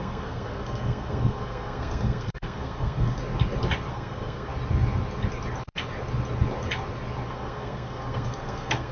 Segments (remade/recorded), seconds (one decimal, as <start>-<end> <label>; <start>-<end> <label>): 0.0-3.2 remade; 3.2-3.9 recorded; 3.9-4.5 remade; 4.5-7.3 recorded; 7.3-8.9 remade